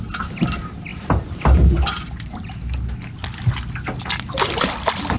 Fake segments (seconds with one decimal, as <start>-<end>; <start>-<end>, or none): none